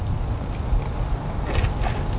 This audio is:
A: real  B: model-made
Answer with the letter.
A